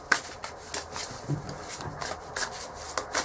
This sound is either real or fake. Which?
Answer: real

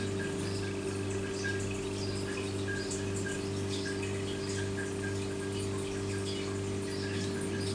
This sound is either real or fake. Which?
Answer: real